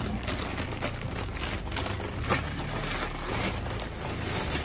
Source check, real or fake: real